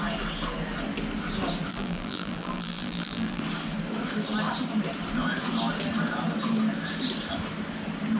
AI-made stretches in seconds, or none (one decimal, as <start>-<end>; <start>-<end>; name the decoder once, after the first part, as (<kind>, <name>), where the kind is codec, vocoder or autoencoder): 1.7-3.4 (vocoder, BigVGAN v2)